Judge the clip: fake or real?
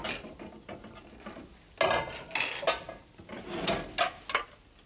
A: real